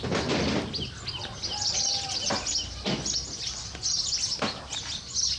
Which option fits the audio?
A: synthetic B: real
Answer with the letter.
B